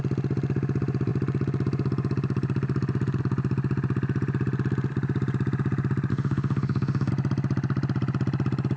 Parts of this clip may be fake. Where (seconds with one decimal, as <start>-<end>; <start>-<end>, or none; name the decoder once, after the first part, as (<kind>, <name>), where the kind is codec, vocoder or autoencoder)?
6.1-7.1 (autoencoder, DAC-VAE)